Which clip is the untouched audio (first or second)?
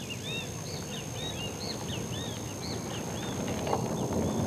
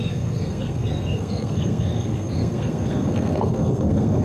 first